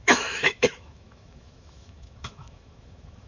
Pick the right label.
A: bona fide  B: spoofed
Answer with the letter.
B